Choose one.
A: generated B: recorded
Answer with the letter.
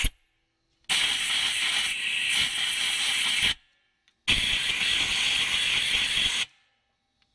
B